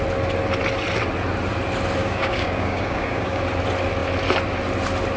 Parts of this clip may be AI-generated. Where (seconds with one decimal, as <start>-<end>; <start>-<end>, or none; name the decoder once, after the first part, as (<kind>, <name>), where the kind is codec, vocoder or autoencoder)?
2.0-3.4 (codec, DAC)